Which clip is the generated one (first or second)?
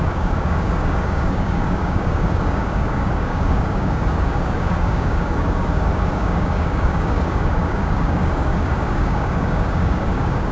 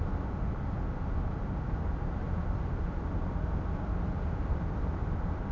first